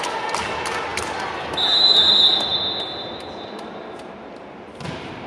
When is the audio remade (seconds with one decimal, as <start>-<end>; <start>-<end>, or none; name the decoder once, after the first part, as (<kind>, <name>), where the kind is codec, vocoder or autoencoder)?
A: none